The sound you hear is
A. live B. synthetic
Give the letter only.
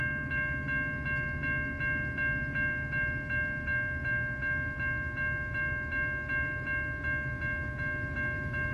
A